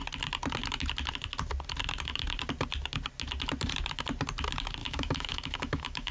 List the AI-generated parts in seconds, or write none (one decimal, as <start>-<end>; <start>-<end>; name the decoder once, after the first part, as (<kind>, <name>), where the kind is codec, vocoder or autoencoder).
4.8-6.1 (autoencoder, DAC-VAE)